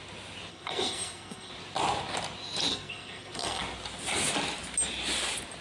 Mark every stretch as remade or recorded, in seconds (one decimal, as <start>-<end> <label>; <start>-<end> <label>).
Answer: 0.0-0.5 recorded; 0.5-1.5 remade; 1.5-2.7 recorded; 2.7-3.6 remade; 3.6-5.6 recorded